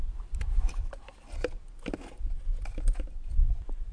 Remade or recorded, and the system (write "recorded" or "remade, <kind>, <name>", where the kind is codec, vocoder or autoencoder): recorded